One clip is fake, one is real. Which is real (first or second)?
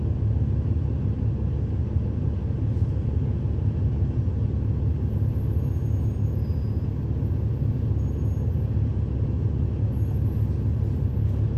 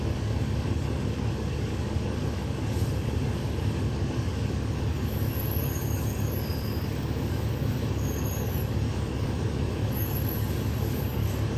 first